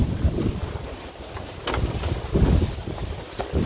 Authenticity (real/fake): real